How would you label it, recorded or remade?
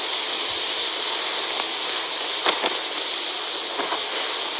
recorded